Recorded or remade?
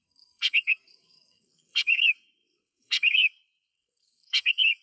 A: remade